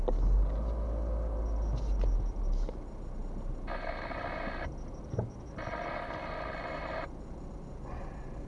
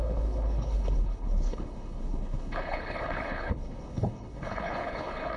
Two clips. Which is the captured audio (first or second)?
first